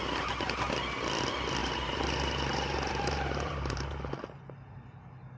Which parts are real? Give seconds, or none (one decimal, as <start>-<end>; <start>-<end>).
0.0-1.6; 4.1-5.4